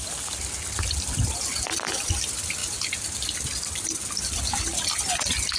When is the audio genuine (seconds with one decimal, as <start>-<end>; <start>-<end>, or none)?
0.0-5.6